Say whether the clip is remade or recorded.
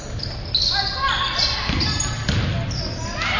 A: recorded